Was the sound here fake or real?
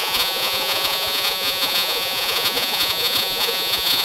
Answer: fake